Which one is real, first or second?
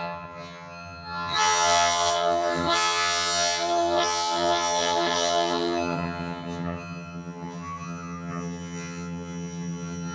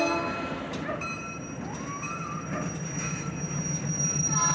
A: second